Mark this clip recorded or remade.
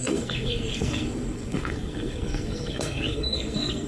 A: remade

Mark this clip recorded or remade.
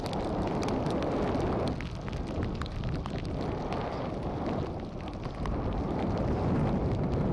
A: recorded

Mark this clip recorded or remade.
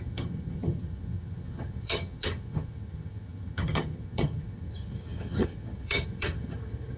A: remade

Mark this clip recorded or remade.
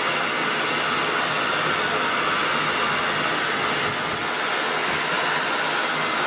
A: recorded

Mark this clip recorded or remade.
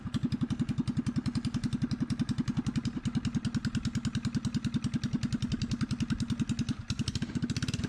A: recorded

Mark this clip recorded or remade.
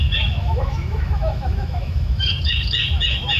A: remade